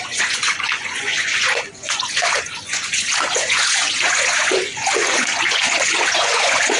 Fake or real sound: fake